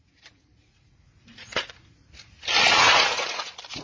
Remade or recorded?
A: remade